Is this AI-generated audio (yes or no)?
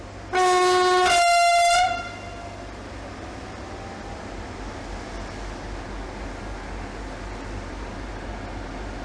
no